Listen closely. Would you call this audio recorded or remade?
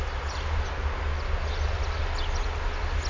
recorded